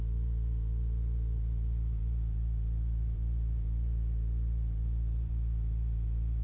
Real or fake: fake